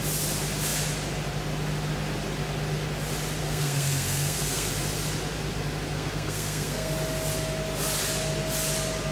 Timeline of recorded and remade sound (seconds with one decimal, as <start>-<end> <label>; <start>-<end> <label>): 0.0-3.4 recorded; 3.4-4.7 remade; 4.7-5.9 recorded; 5.9-6.9 remade; 6.9-9.1 recorded